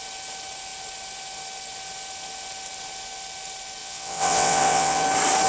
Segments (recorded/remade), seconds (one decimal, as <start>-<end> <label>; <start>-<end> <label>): 0.0-3.8 recorded; 3.8-5.0 remade; 5.0-5.5 recorded